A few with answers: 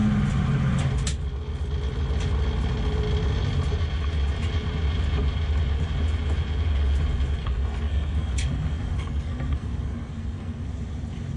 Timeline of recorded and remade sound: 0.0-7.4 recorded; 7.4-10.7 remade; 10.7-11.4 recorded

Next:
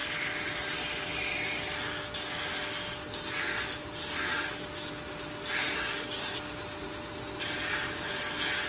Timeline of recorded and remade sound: 0.0-8.7 recorded

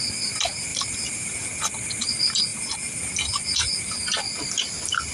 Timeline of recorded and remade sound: 0.0-2.5 recorded; 2.5-3.0 remade; 3.0-5.1 recorded

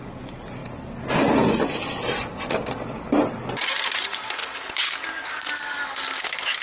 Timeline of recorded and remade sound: 0.0-6.6 recorded

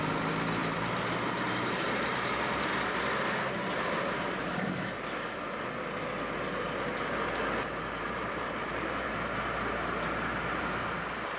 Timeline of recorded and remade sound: 0.0-0.6 recorded; 0.6-4.8 remade; 4.8-8.0 recorded; 8.0-9.1 remade; 9.1-11.4 recorded